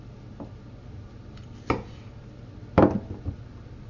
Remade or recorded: recorded